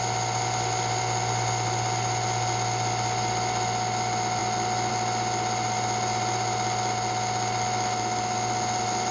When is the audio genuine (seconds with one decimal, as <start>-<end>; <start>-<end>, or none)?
0.0-9.1